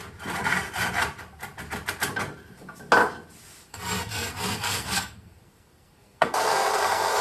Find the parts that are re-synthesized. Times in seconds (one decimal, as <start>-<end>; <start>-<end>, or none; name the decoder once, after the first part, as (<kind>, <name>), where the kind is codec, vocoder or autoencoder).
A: 3.7-7.2 (codec, SNAC)